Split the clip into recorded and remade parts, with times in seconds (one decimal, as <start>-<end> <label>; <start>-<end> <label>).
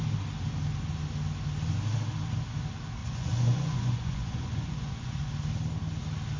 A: 0.0-3.0 recorded; 3.0-5.3 remade; 5.3-6.4 recorded